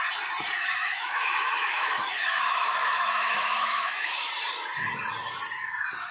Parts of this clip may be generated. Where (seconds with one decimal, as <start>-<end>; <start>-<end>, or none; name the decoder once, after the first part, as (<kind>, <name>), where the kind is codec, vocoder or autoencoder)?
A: 0.6-4.3 (autoencoder, DAC-VAE)